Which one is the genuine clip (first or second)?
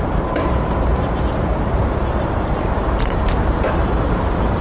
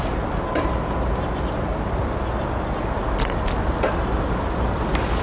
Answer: second